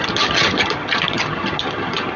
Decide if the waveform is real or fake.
fake